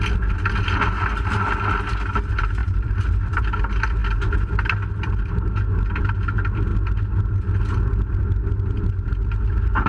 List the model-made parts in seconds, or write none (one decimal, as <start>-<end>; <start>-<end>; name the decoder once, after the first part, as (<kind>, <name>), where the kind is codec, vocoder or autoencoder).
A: 2.6-3.4 (vocoder, BigVGAN v2)